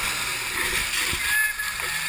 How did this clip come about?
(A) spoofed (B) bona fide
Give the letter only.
B